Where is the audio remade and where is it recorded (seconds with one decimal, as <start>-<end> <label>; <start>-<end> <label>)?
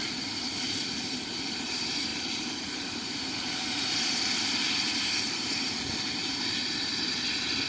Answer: 0.0-6.9 remade; 6.9-7.7 recorded